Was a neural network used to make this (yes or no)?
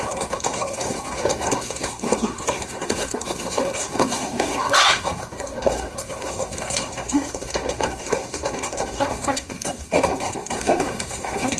yes